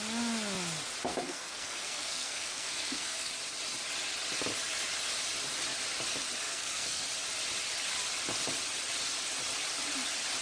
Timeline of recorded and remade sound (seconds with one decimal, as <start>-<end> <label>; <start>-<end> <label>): 0.0-1.1 recorded; 1.1-3.3 remade; 3.3-6.5 recorded; 6.5-7.0 remade; 7.0-10.4 recorded